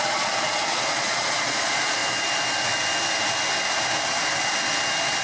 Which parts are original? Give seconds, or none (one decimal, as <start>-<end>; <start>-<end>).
2.0-5.2